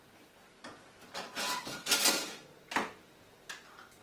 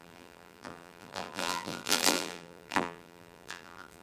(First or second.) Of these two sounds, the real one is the first